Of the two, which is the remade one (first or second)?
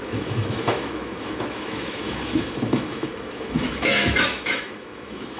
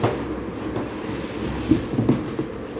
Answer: first